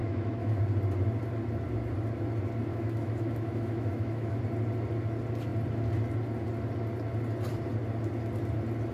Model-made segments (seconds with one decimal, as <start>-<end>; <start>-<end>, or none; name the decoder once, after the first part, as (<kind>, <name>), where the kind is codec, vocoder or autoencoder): 0.0-0.6 (autoencoder, DAC-VAE); 2.7-4.4